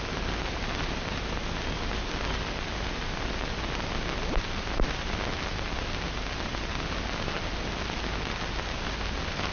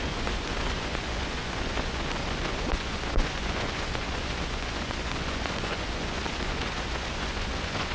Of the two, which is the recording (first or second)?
first